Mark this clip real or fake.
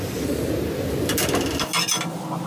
real